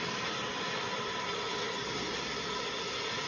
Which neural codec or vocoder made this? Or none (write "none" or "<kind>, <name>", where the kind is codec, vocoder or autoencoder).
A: none